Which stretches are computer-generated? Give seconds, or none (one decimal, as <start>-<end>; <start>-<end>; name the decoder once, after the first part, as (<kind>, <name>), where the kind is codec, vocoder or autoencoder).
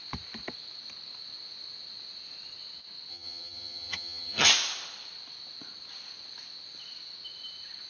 3.1-4.5 (vocoder, HiFi-GAN)